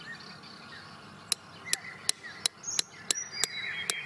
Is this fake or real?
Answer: real